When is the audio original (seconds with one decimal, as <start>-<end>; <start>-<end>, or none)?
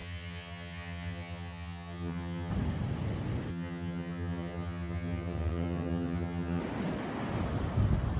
2.5-3.5; 6.6-8.2